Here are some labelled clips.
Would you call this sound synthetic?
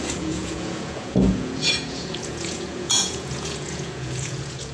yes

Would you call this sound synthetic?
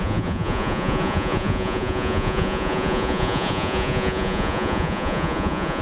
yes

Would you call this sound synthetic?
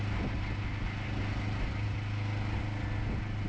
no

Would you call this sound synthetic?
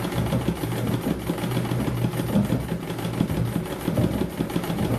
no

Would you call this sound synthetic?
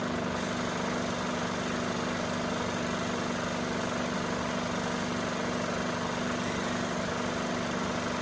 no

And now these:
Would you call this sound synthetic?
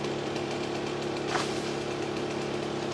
no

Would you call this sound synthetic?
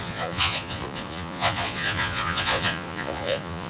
yes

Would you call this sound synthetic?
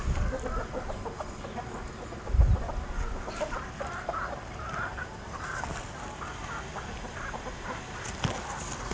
no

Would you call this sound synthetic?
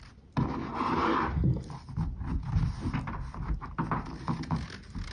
no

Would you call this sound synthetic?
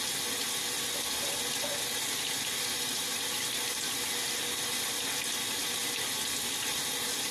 no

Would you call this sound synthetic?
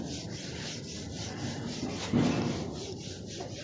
no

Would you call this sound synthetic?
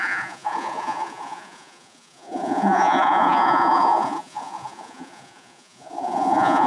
yes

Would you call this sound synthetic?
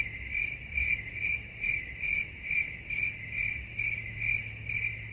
no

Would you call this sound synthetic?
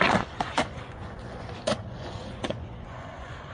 yes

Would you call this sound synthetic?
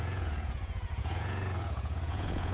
yes